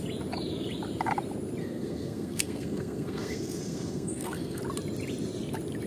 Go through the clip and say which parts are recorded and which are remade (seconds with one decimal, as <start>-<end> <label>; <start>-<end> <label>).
0.0-1.6 recorded; 1.6-4.6 remade; 4.6-5.9 recorded